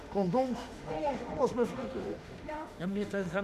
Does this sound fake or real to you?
fake